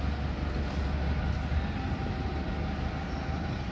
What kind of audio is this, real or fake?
real